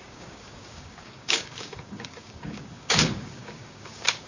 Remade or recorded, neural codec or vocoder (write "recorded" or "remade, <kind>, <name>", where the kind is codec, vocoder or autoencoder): remade, codec, DAC